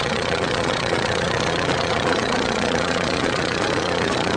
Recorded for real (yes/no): no